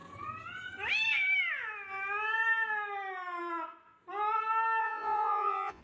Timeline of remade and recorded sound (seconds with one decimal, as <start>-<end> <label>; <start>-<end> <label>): 0.0-4.8 recorded; 4.8-5.8 remade

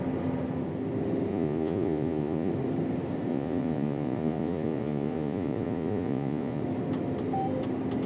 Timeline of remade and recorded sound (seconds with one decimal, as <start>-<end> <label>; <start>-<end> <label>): 0.0-1.3 recorded; 1.3-2.5 remade; 2.5-3.3 recorded; 3.3-6.6 remade; 6.6-8.1 recorded